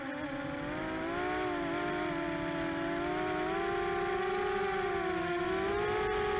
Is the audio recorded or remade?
recorded